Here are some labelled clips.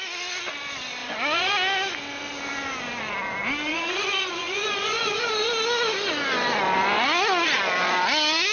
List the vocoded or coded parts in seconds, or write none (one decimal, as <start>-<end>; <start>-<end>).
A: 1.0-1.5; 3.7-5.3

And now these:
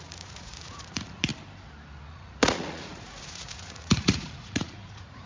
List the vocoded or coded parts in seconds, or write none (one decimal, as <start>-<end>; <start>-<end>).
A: 0.0-1.3; 2.1-5.3

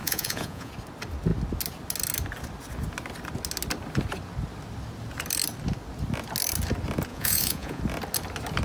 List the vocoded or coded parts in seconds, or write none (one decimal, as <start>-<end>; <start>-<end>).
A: 0.0-0.7; 7.1-7.8